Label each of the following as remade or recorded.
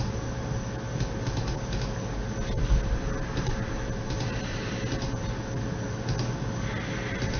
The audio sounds recorded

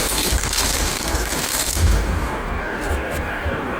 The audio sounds remade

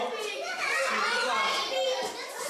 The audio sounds recorded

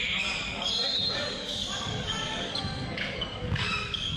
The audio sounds remade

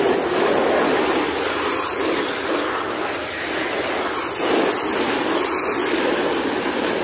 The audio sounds recorded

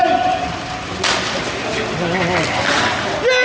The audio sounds recorded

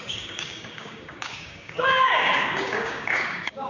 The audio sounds remade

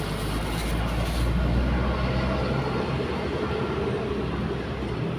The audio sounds recorded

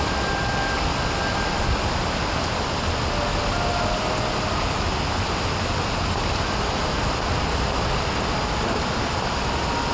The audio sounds recorded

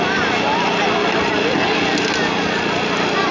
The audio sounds recorded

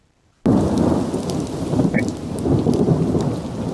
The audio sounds recorded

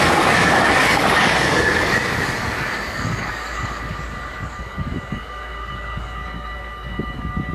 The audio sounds remade